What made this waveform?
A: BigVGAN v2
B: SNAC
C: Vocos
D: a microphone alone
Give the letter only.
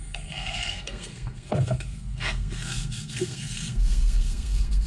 B